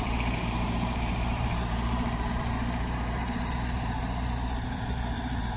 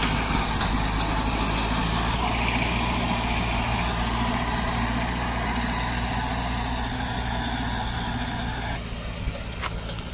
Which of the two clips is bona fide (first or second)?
second